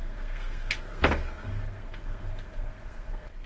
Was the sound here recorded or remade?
remade